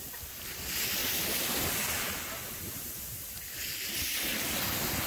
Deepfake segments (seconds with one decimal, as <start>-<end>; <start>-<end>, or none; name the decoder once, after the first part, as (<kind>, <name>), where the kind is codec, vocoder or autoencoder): none